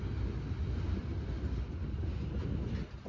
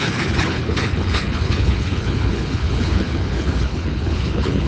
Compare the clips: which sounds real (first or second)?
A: first